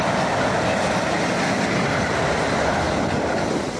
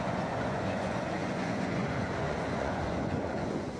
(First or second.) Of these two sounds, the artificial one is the second